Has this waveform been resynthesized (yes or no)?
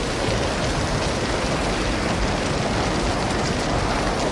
no